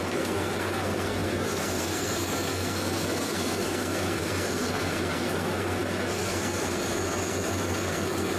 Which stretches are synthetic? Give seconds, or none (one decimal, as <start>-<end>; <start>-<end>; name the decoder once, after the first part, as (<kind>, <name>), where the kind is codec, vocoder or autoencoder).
0.0-8.4 (codec, SNAC)